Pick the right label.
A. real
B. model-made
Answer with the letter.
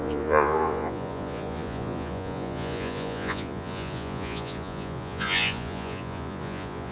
B